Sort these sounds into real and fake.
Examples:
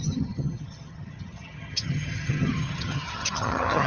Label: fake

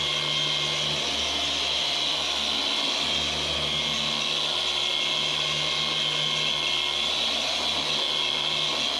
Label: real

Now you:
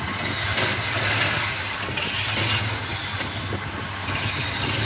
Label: real